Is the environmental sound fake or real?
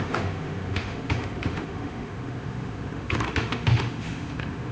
fake